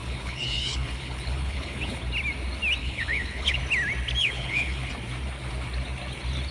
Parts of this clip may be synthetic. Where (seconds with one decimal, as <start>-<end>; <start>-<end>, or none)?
0.0-2.0; 2.8-3.6; 4.2-4.9